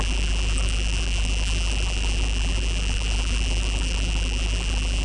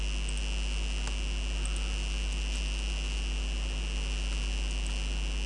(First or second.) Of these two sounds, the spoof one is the first